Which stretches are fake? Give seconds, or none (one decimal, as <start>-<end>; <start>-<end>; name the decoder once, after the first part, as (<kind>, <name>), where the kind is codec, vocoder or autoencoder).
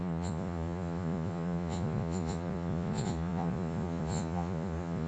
0.0-5.1 (vocoder, Vocos)